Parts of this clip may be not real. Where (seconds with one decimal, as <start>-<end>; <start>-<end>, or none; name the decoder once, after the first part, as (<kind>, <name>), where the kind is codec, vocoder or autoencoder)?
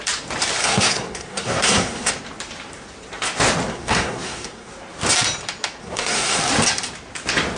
0.6-2.1 (codec, SNAC); 3.7-4.7; 5.8-6.4